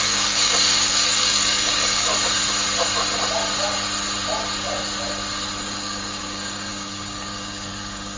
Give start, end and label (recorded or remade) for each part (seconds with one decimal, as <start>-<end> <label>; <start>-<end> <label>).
0.0-2.1 remade; 2.1-5.6 recorded; 5.6-8.2 remade